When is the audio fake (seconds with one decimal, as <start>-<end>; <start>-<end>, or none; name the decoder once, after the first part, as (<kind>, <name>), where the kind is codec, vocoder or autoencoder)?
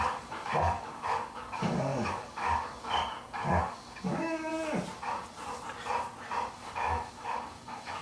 0.0-4.5 (codec, DAC); 6.5-8.0